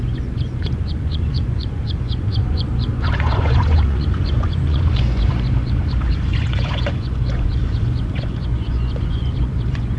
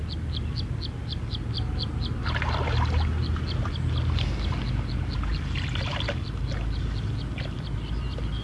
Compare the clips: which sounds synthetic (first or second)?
first